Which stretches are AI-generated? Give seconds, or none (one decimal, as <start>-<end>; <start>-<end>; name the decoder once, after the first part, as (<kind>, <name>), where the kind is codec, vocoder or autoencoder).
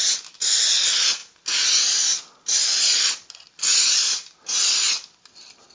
none